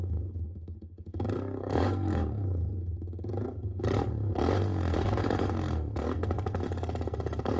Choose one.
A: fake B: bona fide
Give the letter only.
A